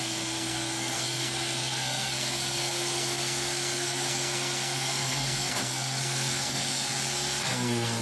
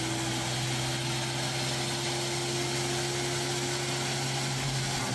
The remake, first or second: first